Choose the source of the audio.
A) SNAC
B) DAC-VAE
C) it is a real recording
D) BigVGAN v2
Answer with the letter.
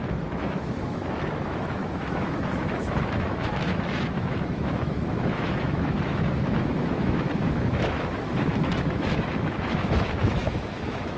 B